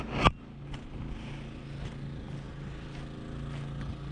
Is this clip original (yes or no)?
yes